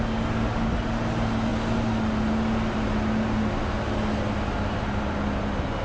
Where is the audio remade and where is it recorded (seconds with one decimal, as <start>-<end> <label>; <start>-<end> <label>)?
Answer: 0.0-5.8 recorded